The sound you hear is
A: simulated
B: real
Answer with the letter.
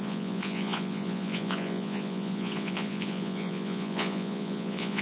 A